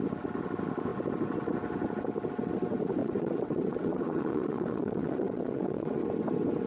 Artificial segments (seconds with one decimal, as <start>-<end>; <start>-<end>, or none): 3.0-6.0